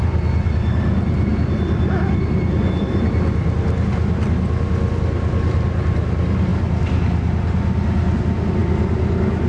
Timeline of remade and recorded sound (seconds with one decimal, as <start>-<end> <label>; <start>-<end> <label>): 0.0-9.5 remade